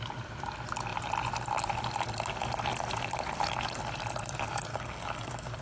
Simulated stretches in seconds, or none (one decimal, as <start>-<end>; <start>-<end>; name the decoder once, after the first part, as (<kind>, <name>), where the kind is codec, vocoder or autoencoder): 4.7-5.6 (codec, DAC)